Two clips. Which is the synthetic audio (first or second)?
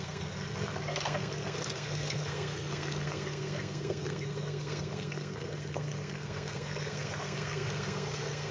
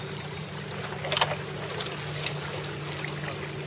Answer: first